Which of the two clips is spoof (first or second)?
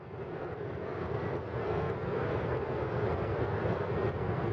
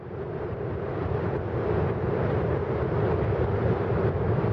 first